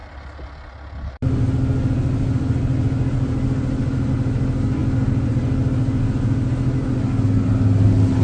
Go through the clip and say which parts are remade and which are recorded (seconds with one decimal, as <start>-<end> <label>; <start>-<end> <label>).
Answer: 0.0-8.2 recorded